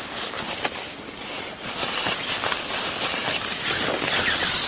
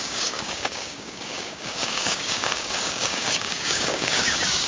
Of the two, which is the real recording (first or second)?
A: first